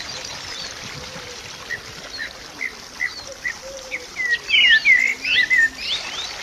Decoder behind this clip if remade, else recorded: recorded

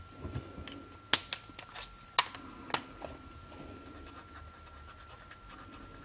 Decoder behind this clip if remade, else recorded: recorded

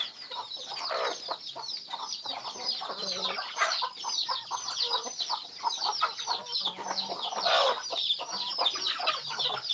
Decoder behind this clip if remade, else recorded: remade, vocoder, BigVGAN v2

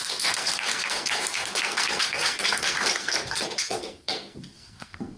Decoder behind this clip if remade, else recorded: remade, codec, SNAC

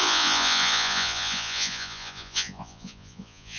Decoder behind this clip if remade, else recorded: remade, vocoder, Vocos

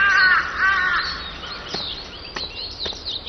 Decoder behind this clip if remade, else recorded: recorded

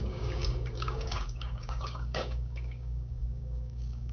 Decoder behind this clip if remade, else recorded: remade, codec, DAC